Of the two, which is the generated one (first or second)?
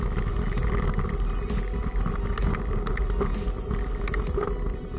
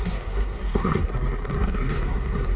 second